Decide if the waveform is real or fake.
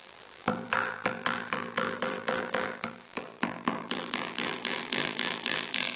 fake